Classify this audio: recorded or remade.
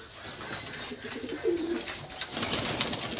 recorded